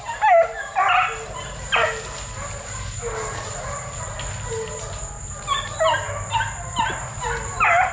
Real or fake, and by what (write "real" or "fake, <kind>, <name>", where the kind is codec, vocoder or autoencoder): real